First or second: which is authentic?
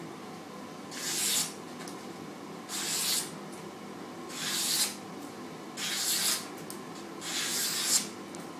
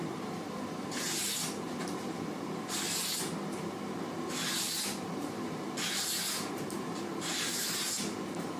first